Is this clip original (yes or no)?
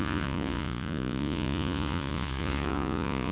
no